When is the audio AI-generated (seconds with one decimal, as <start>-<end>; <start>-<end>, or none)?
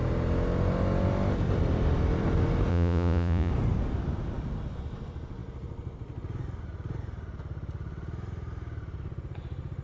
2.7-3.5